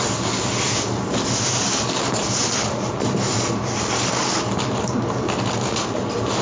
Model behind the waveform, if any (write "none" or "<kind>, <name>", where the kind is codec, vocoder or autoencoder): none